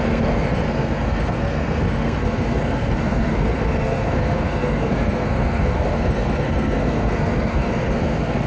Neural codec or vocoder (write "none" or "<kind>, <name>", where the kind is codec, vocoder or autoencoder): codec, SNAC